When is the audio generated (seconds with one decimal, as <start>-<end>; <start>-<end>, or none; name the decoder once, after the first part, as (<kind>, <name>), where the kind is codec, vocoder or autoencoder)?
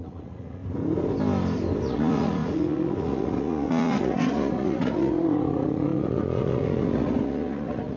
0.0-0.6 (vocoder, Vocos); 1.8-8.0